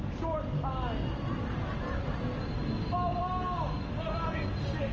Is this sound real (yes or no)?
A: yes